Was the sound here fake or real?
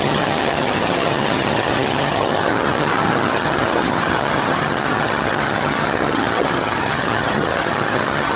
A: fake